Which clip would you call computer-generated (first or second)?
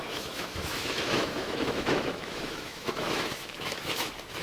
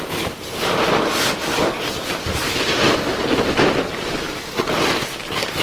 first